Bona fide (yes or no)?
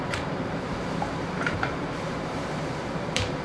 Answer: no